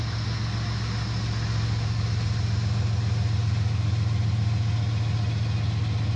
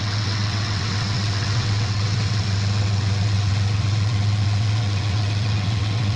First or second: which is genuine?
first